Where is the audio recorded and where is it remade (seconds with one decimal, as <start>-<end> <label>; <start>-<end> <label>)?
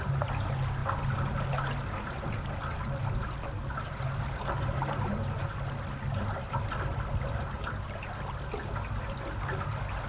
0.0-10.1 recorded